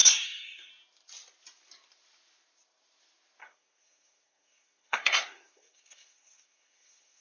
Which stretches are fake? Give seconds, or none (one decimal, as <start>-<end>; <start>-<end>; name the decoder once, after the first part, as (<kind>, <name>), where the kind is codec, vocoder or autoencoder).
0.0-0.7 (codec, SNAC); 3.4-7.2